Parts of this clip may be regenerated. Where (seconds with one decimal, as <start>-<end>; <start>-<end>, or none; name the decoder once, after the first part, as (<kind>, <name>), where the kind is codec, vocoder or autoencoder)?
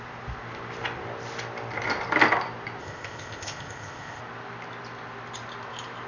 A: 2.8-4.2 (codec, ZipCodec)